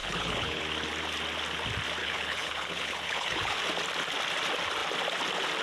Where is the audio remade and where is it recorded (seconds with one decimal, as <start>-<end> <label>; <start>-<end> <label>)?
0.0-0.6 remade; 0.6-2.0 recorded; 2.0-3.6 remade; 3.6-5.6 recorded